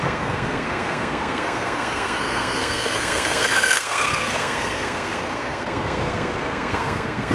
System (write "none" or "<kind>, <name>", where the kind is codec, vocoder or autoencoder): codec, SNAC